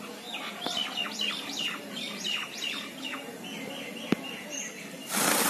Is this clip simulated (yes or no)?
no